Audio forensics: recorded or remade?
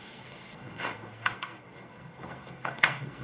remade